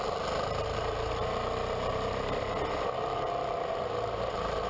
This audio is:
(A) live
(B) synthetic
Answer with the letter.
A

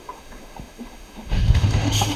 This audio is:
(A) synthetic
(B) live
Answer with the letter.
A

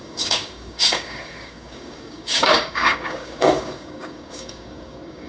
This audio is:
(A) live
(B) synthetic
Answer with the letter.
B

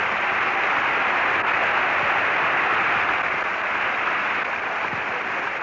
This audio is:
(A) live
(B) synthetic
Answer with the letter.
A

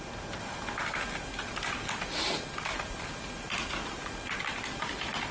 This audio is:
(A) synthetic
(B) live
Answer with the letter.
B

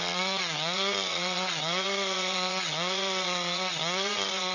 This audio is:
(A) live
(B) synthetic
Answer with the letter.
B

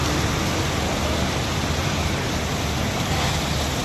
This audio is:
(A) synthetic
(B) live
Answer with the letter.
B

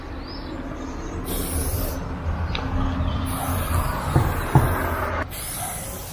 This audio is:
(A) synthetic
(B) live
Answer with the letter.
B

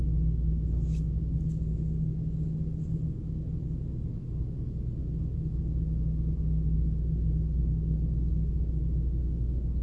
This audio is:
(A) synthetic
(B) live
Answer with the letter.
B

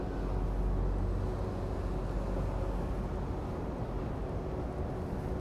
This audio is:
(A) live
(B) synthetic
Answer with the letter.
A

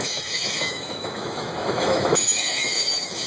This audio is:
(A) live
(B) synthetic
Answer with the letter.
B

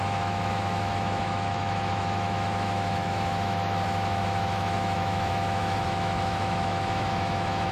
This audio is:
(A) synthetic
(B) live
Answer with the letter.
A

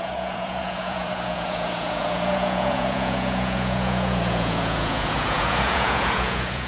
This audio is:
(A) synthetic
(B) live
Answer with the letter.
A